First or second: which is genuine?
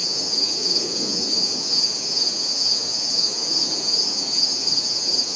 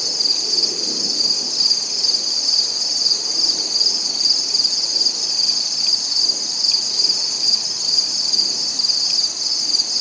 second